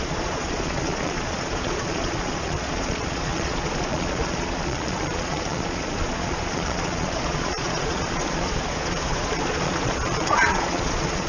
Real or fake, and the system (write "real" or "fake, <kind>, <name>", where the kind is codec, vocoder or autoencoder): fake, vocoder, Vocos